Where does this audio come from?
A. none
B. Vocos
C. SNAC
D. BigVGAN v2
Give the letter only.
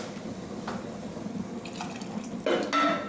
A